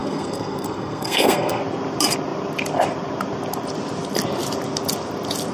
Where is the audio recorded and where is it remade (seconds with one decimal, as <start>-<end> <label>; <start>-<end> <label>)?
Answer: 0.0-1.6 remade; 1.6-5.5 recorded